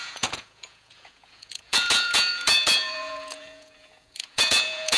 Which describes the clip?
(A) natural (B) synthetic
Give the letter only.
B